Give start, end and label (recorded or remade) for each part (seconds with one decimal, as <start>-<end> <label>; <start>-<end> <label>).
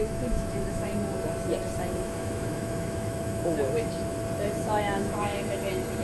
0.0-0.9 remade; 0.9-1.8 recorded; 1.8-4.1 remade; 4.1-4.6 recorded; 4.6-5.3 remade; 5.3-6.0 recorded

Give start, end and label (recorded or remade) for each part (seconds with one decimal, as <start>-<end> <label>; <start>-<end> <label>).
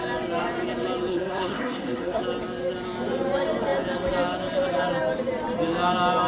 0.0-1.1 recorded; 1.1-2.2 remade; 2.2-6.3 recorded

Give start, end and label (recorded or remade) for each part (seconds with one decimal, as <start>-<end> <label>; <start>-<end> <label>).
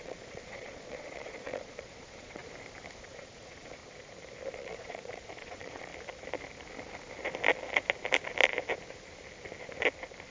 0.0-2.4 remade; 2.4-3.0 recorded; 3.0-3.8 remade; 3.8-4.5 recorded; 4.5-5.9 remade; 5.9-10.3 recorded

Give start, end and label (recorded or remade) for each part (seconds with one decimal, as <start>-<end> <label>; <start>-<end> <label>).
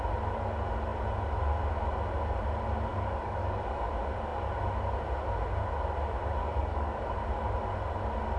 0.0-2.9 recorded; 2.9-3.9 remade; 3.9-6.4 recorded; 6.4-7.0 remade; 7.0-8.4 recorded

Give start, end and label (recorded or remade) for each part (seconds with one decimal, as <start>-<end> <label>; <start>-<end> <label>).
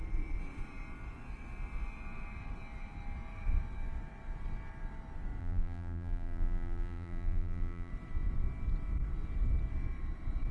0.0-5.4 recorded; 5.4-7.9 remade; 7.9-10.5 recorded